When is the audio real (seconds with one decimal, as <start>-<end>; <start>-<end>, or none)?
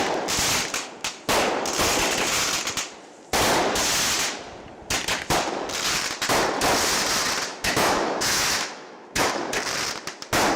0.0-7.5; 9.4-10.6